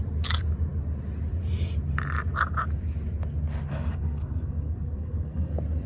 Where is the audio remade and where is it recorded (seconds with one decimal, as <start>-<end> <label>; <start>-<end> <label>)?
0.0-3.7 recorded; 3.7-5.5 remade; 5.5-5.9 recorded